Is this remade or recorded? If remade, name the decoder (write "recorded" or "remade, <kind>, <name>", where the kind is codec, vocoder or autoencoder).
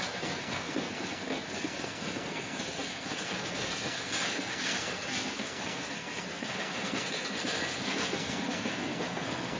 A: remade, codec, SNAC